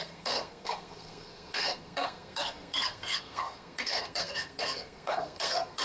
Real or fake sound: fake